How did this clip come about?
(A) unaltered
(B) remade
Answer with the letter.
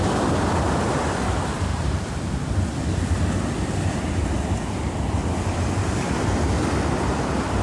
A